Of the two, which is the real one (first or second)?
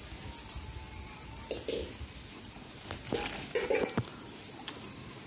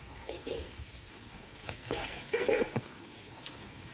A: first